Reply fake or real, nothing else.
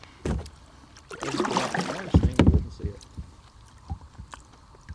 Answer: fake